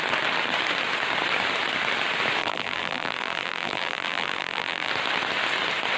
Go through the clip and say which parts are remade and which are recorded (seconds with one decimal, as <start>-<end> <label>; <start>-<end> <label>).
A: 0.0-2.4 recorded; 2.4-4.9 remade; 4.9-6.0 recorded